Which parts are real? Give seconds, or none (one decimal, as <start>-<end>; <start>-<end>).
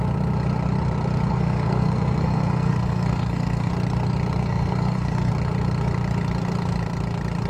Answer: 0.0-1.3; 3.7-4.4; 5.3-7.5